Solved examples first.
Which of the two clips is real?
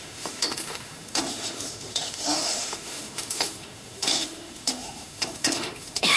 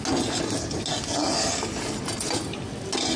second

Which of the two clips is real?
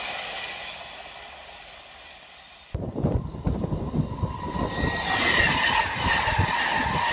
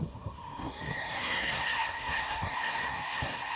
first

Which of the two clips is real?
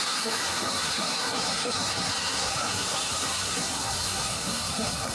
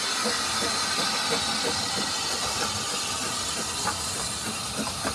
second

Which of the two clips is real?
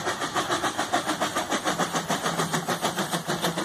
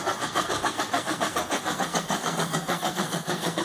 first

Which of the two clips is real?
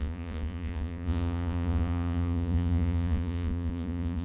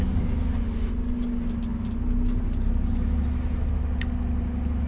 second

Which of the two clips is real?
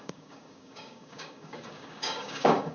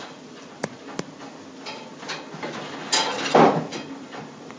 second